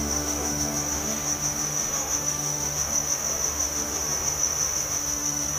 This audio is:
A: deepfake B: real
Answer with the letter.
A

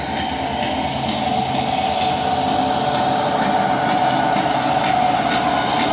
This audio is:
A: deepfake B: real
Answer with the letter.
B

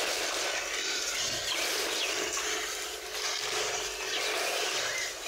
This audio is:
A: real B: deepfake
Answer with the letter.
A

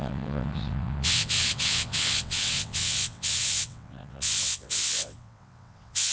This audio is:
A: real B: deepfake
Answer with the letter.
B